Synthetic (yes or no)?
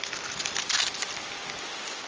no